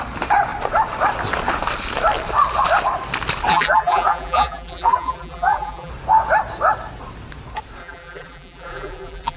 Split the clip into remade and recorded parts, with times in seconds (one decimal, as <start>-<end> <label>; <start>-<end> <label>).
0.0-3.5 recorded; 3.5-5.9 remade; 5.9-7.8 recorded; 7.8-9.4 remade